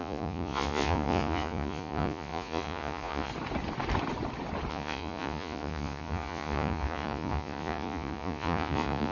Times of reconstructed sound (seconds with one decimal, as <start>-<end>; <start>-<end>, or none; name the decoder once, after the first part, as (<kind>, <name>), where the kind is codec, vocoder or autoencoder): 0.0-3.3 (vocoder, Vocos); 4.7-9.1